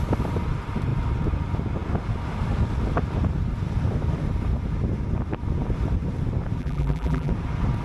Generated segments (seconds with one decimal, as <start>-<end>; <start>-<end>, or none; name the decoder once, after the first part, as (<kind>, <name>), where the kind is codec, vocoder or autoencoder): 6.6-7.3 (vocoder, BigVGAN v2)